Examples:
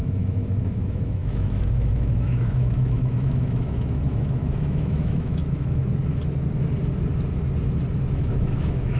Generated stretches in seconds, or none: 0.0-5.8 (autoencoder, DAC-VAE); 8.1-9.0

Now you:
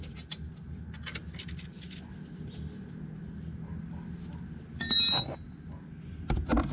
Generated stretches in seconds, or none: none

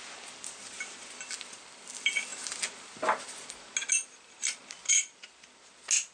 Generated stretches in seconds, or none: none

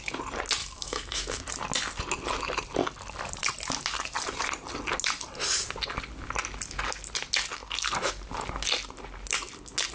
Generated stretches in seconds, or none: 0.6-1.4 (autoencoder, DAC-VAE)

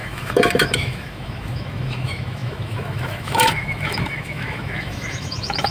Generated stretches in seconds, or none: 0.0-5.7 (autoencoder, DAC-VAE)

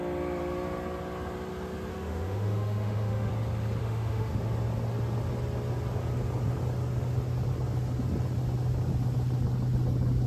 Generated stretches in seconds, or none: 1.9-3.3 (autoencoder, DAC-VAE); 3.8-4.3